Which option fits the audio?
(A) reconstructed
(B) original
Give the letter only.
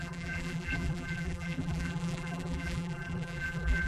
A